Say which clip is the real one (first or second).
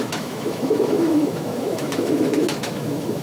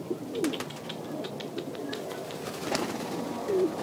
second